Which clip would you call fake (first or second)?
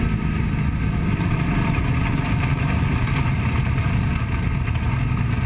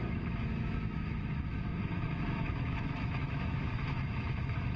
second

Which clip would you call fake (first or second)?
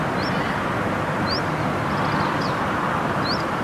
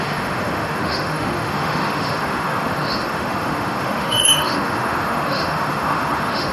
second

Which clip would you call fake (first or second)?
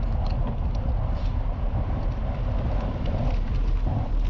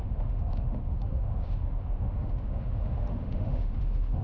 second